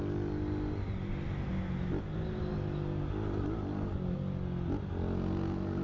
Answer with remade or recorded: recorded